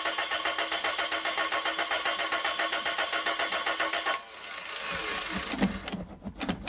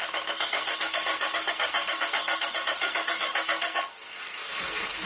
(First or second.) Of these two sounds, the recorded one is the first